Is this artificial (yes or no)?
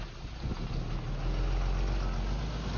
no